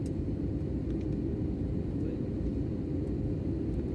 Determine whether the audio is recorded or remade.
remade